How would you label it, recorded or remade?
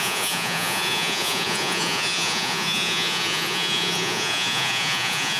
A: remade